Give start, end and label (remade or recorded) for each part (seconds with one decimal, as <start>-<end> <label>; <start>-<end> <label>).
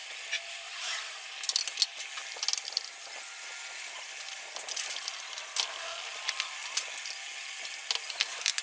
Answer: 0.0-8.6 recorded